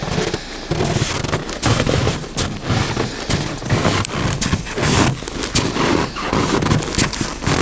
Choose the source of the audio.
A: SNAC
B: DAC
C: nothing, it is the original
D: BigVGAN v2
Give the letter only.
C